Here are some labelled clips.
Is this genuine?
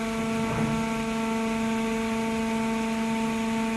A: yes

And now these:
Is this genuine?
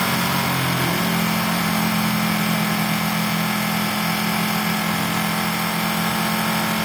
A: yes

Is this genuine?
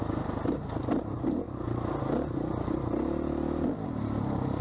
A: yes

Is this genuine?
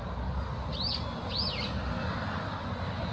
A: yes